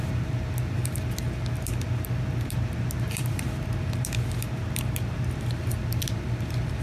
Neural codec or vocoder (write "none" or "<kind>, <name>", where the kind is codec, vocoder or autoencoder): vocoder, BigVGAN v2